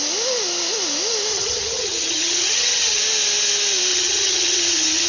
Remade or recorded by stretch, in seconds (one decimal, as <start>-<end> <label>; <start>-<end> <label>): 0.0-1.3 recorded; 1.3-3.0 remade; 3.0-3.9 recorded; 3.9-5.1 remade